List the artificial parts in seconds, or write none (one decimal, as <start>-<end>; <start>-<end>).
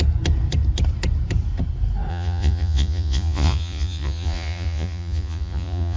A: 2.1-6.0